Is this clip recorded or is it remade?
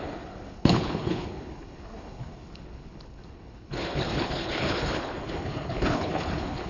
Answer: remade